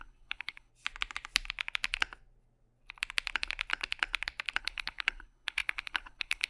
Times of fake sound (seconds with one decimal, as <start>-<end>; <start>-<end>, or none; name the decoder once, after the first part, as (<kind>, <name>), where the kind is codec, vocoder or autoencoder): 0.0-0.7 (codec, HILCodec); 4.6-6.5